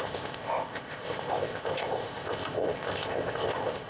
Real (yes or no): no